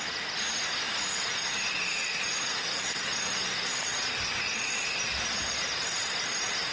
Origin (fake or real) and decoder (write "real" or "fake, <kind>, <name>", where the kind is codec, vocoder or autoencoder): real